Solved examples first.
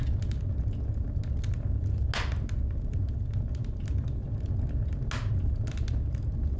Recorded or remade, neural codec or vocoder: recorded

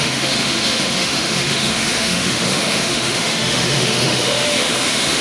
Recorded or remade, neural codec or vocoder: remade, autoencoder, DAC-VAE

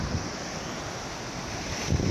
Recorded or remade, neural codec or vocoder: recorded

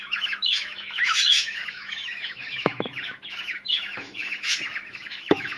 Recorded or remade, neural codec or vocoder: remade, autoencoder, DAC-VAE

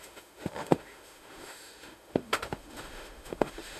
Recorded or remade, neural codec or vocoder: remade, autoencoder, DAC-VAE